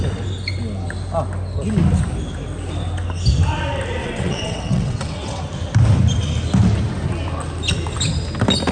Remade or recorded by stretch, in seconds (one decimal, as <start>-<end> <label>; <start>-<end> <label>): 0.0-4.0 recorded; 4.0-5.4 remade; 5.4-8.7 recorded